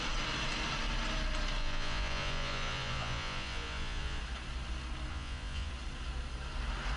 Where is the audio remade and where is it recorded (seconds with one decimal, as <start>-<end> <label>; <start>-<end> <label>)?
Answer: 0.0-1.6 recorded; 1.6-4.2 remade; 4.2-5.1 recorded; 5.1-5.7 remade; 5.7-7.0 recorded